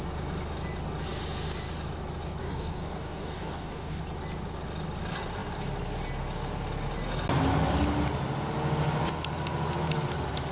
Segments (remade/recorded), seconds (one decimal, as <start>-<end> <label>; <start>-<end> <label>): 0.0-2.4 recorded; 2.4-4.0 remade; 4.0-10.5 recorded